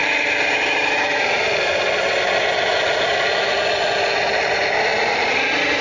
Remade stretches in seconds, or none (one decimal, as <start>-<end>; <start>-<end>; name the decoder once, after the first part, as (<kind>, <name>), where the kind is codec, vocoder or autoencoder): none